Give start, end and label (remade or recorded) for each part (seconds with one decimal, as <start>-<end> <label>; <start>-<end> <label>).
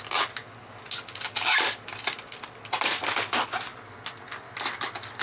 0.0-5.2 recorded